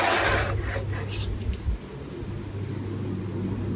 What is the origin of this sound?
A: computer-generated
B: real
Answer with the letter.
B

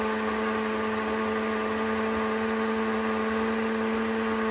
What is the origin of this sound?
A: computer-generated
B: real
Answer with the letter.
B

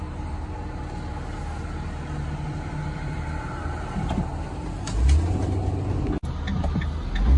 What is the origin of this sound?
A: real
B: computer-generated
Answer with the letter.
A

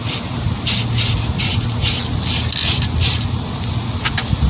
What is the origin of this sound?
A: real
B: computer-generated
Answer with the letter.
A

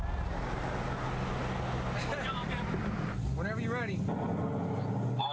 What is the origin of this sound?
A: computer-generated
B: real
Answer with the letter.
B